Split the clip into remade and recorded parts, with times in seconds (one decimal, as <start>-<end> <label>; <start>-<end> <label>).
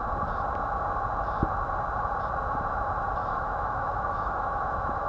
0.0-3.2 recorded; 3.2-5.1 remade